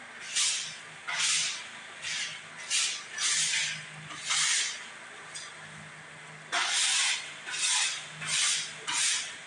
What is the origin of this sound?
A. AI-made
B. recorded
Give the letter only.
B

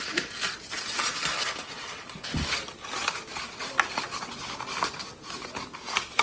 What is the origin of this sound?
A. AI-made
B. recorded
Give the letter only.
B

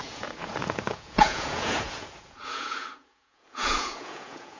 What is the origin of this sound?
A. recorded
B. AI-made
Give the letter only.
B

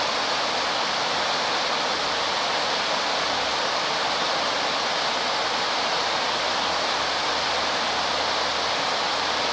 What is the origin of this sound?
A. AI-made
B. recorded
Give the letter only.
B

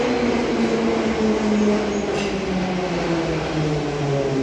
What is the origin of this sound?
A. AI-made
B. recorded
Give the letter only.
B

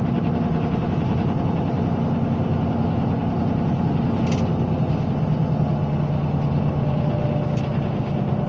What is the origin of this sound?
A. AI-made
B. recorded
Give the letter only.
B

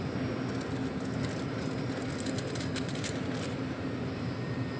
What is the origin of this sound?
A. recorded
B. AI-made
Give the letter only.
A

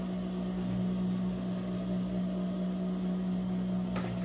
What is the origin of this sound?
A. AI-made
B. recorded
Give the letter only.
B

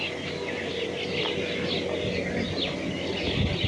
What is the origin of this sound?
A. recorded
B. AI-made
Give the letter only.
A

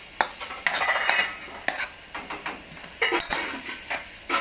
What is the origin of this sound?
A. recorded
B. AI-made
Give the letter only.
A